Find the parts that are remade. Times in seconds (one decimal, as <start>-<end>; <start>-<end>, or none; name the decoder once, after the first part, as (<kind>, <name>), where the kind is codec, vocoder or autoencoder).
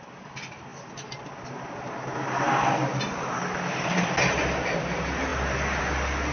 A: none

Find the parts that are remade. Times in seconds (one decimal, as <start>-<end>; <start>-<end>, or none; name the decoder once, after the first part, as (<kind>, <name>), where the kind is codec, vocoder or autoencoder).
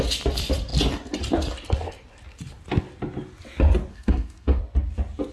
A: 3.9-4.6 (codec, SNAC)